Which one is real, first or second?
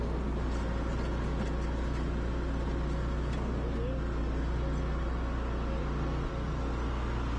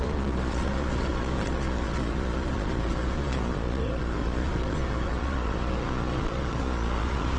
first